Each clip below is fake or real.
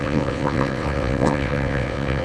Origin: fake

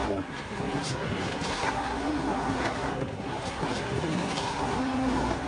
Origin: fake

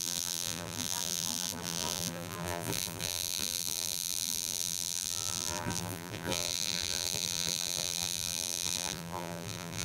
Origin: fake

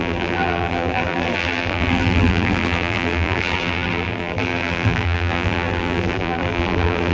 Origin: fake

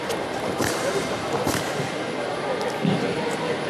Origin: real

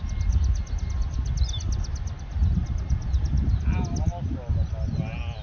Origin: real